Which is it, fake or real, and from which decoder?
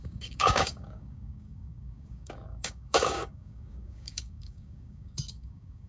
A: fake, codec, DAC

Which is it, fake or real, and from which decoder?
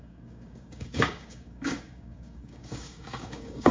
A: fake, codec, DAC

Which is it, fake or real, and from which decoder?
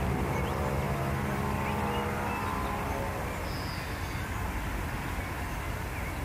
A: real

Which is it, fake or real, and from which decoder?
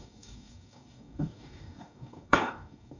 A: fake, codec, DAC